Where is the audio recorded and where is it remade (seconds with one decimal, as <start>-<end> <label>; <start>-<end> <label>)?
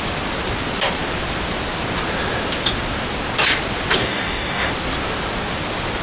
0.0-4.0 recorded; 4.0-4.7 remade; 4.7-6.0 recorded